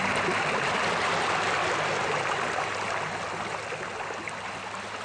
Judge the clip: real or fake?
real